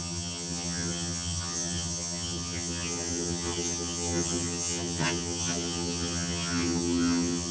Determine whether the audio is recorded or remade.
remade